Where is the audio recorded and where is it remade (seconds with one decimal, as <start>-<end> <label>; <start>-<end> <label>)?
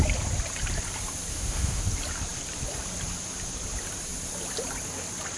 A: 0.0-1.3 recorded; 1.3-1.8 remade; 1.8-5.4 recorded